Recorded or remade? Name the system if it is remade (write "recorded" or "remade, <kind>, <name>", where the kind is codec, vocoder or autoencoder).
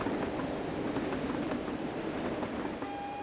recorded